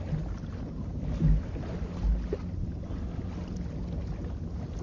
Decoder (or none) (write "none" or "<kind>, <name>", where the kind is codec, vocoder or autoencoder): none